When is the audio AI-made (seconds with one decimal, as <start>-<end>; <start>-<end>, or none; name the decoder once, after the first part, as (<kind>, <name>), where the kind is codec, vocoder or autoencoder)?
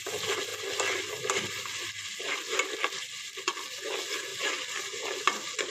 none